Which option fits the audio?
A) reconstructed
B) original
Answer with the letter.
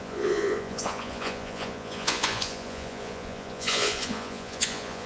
A